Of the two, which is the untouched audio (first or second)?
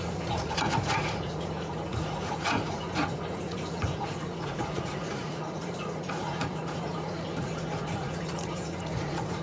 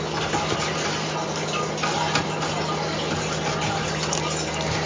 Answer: second